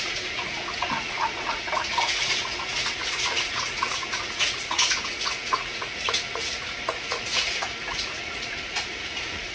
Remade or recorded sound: remade